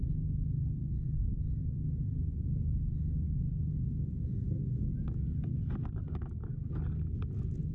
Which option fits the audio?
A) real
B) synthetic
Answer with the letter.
A